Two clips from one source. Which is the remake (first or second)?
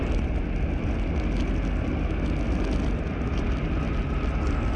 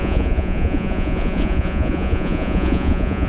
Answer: second